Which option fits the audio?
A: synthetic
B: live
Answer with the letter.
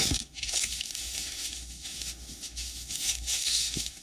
A